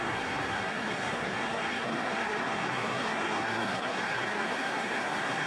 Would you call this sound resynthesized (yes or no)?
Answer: yes